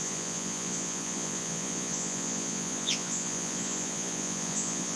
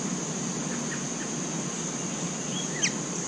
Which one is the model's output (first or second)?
first